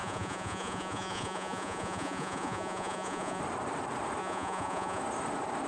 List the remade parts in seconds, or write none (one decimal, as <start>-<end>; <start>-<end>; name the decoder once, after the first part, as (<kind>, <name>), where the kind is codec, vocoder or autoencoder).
0.0-3.4 (vocoder, Vocos); 4.2-5.0